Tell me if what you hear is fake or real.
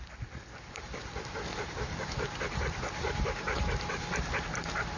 fake